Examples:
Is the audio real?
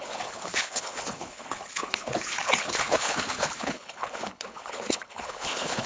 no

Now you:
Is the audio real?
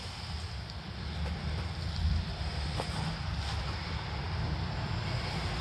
yes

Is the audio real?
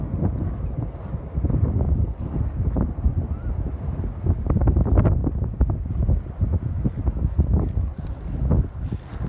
yes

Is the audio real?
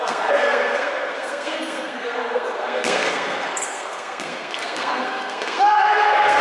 no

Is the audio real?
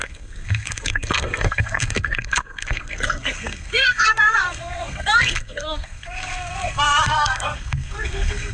no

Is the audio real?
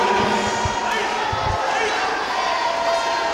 yes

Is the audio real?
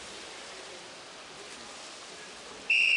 yes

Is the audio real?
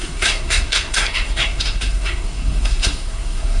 no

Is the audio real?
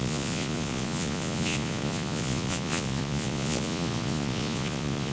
no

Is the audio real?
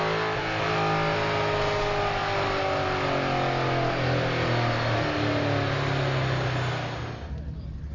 yes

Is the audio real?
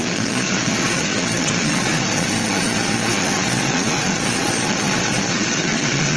no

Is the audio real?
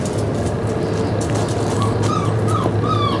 yes